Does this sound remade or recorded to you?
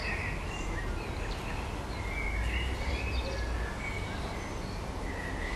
recorded